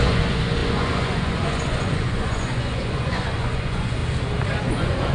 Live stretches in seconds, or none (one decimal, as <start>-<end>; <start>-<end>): 4.0-4.6